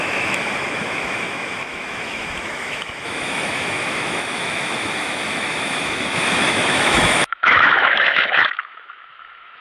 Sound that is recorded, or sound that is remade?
remade